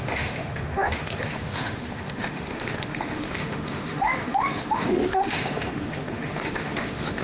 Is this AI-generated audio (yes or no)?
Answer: yes